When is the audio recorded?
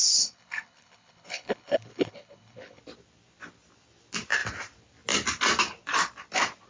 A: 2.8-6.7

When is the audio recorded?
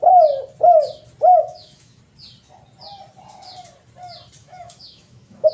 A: 0.0-1.3; 2.0-4.4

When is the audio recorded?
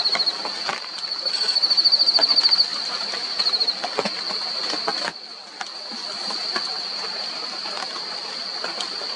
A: 0.0-2.7; 3.4-9.2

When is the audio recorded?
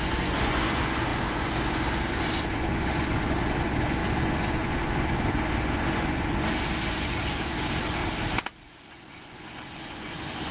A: 8.0-8.6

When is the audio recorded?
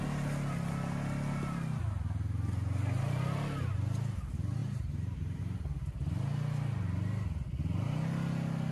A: 0.0-4.6; 5.4-8.7